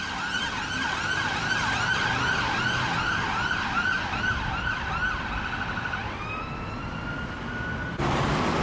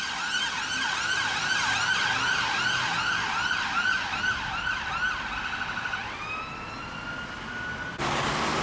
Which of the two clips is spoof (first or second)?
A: first